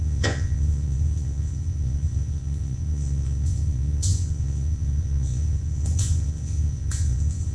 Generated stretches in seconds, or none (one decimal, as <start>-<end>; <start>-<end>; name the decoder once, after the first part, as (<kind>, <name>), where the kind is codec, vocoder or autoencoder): 0.0-7.5 (vocoder, Vocos)